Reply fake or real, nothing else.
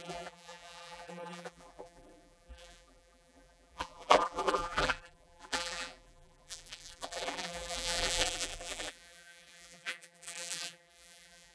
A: fake